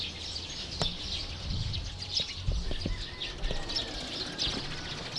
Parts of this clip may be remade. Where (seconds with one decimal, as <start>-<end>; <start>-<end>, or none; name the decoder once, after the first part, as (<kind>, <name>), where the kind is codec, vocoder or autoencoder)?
none